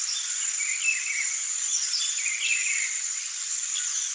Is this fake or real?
real